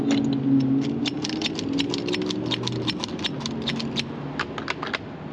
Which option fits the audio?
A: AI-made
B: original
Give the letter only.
B